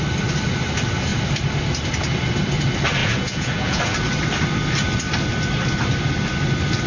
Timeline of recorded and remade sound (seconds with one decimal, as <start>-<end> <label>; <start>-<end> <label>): 0.0-3.0 recorded; 3.0-3.8 remade; 3.8-6.9 recorded